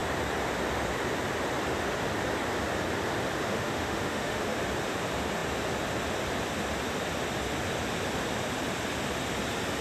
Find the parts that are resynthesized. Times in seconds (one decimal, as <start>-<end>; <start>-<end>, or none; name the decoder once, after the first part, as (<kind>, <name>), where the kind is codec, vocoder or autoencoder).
3.5-4.6 (autoencoder, DAC-VAE)